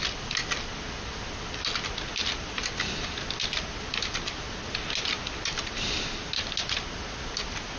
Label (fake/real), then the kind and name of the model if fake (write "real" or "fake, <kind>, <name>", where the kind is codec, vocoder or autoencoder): real